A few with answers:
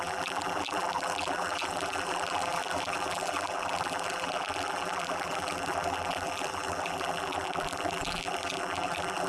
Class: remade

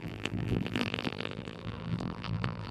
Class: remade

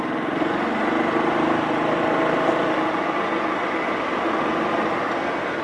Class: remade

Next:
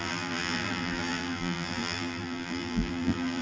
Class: remade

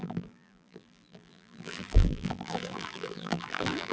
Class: remade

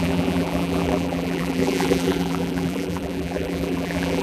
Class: remade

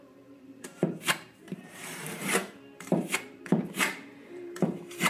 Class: remade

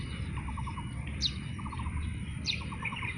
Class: remade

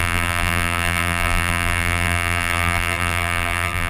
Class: remade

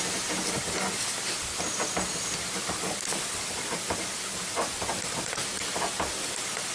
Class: recorded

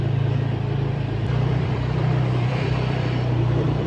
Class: remade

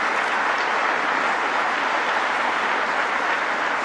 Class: recorded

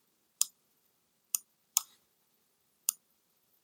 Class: remade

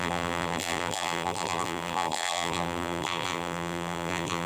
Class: remade